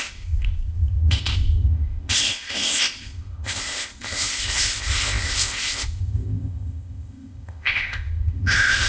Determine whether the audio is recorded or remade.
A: remade